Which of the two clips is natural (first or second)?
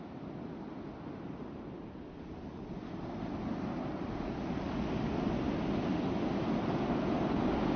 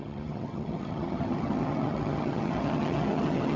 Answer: first